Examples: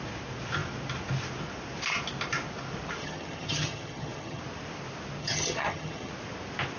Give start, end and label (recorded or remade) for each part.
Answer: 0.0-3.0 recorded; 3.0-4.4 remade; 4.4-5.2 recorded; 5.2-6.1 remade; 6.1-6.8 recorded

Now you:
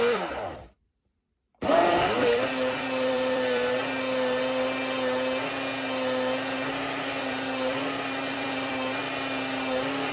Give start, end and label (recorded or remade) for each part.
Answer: 0.0-3.8 remade; 3.8-7.1 recorded; 7.1-9.0 remade; 9.0-10.1 recorded

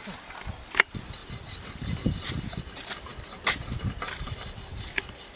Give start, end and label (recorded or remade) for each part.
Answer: 0.0-5.4 recorded

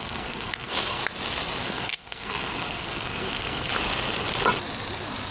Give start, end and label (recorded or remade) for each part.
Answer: 0.0-1.0 remade; 1.0-1.6 recorded; 1.6-3.7 remade; 3.7-5.3 recorded

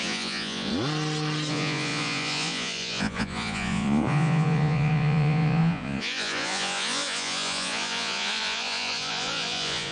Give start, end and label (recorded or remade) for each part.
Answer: 0.0-0.7 remade; 0.7-1.5 recorded; 1.5-9.9 remade